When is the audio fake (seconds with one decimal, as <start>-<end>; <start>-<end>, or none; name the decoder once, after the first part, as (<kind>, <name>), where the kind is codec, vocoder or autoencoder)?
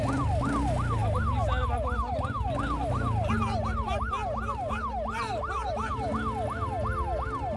none